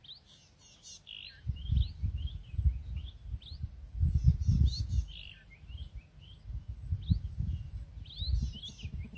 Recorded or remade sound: recorded